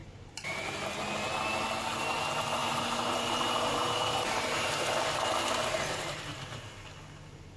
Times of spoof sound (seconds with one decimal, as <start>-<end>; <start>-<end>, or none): 0.0-0.9; 2.6-5.0; 5.6-6.2